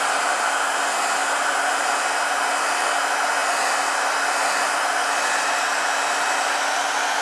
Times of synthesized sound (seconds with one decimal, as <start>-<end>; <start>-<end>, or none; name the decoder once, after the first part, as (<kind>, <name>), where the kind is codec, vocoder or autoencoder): none